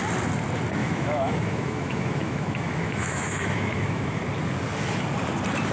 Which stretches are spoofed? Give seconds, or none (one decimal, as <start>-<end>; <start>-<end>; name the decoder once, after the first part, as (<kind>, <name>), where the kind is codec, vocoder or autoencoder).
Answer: 0.8-4.2 (autoencoder, DAC-VAE)